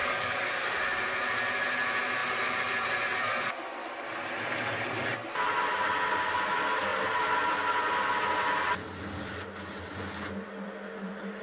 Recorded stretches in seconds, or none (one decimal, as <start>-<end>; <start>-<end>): 0.8-11.4